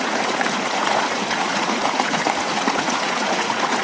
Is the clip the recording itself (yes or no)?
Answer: no